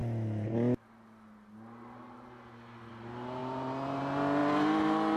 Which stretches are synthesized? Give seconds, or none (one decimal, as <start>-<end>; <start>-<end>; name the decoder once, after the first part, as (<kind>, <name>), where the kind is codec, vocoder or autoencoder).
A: none